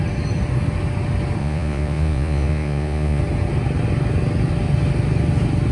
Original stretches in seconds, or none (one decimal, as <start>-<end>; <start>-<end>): 0.0-1.4; 3.2-5.7